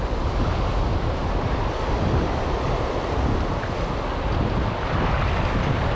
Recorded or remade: recorded